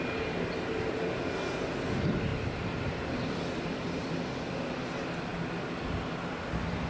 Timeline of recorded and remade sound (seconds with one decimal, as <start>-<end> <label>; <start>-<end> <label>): 0.0-6.9 recorded